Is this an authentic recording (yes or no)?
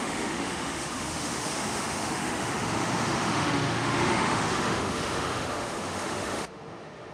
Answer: no